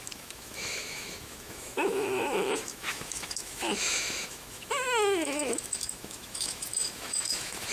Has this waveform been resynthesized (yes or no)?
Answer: yes